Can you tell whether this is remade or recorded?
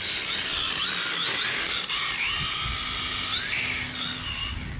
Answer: recorded